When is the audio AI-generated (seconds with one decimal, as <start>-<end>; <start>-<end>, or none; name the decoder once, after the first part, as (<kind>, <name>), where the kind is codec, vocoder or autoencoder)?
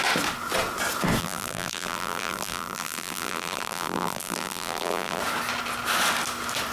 1.2-5.2 (vocoder, BigVGAN v2)